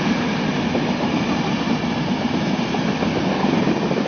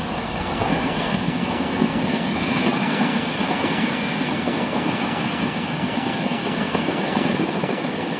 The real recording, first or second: first